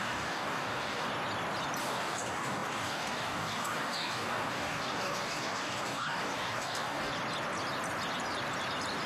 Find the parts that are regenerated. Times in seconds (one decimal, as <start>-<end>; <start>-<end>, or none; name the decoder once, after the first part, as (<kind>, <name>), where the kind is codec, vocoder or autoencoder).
0.0-1.1 (codec, DAC); 1.8-7.1